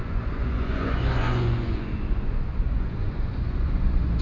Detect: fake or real fake